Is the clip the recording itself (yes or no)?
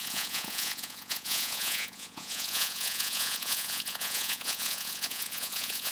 no